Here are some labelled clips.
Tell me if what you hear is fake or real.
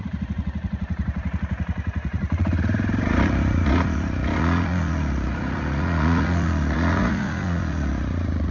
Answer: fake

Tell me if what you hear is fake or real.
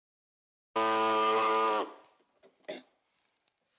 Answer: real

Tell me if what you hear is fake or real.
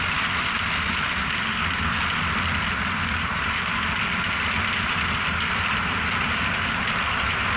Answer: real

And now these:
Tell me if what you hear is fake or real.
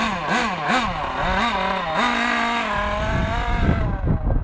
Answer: real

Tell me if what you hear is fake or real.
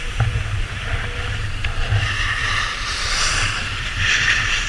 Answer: real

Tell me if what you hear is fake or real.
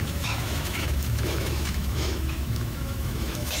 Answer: fake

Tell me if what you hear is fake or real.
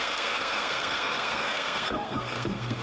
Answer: fake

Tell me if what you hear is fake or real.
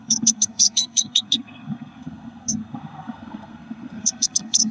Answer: fake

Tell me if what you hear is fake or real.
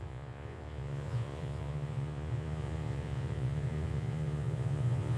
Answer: fake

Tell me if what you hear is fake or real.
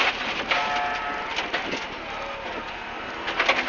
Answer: real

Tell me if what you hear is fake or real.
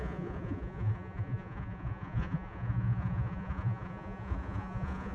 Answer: fake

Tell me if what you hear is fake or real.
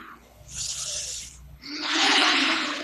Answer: fake